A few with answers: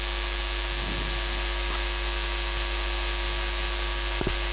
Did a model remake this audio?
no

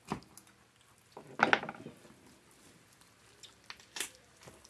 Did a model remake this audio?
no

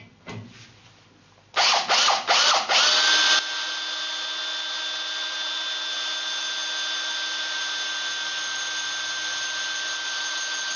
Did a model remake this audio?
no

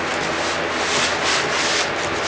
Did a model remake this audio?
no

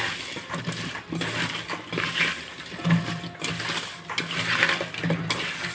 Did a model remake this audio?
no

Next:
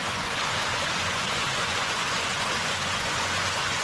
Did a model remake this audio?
yes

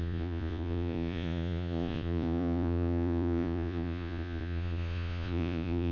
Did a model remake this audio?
yes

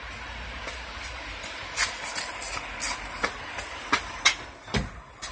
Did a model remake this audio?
no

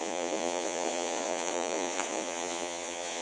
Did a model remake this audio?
yes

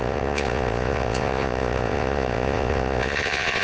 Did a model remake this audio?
yes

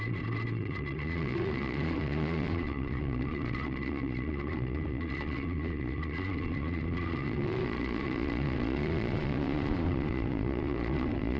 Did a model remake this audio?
yes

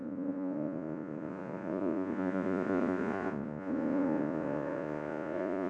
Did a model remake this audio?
yes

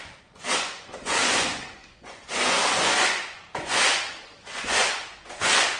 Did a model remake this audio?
yes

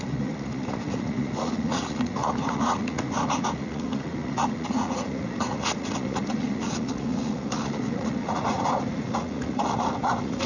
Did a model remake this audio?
yes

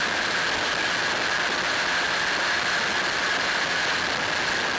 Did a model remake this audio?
no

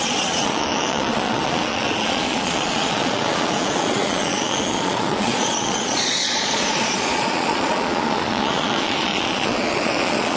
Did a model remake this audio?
yes